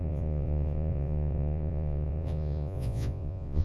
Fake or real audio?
fake